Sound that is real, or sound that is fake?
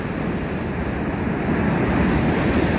real